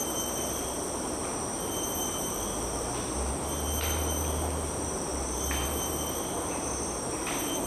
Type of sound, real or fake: fake